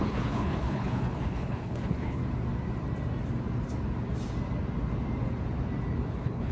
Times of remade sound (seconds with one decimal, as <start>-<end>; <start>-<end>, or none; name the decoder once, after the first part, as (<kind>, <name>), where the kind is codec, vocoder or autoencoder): 0.0-2.2 (codec, HILCodec); 6.1-6.5